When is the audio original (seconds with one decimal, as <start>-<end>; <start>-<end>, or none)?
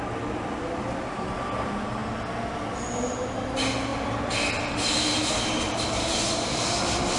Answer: 0.0-7.2